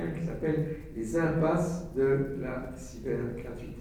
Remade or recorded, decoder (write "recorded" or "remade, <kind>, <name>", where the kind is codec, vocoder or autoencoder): recorded